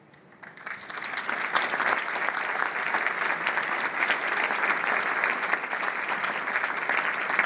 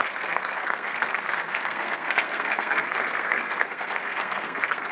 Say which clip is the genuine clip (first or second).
first